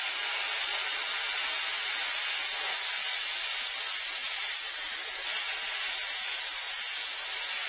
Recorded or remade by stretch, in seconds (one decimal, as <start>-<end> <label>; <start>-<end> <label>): 0.0-7.7 recorded